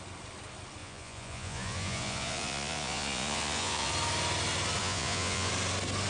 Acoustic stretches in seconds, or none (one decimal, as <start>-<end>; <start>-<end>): 0.0-0.8; 3.9-4.8; 5.5-6.1

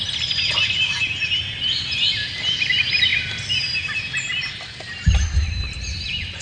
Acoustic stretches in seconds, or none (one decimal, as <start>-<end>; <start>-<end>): 0.0-6.4

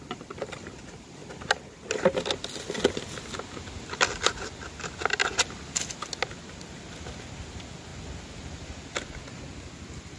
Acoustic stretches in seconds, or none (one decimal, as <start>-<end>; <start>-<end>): 0.0-10.2

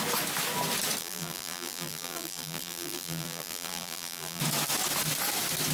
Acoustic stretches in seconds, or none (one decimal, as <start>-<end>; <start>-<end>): 0.0-1.0; 4.4-5.7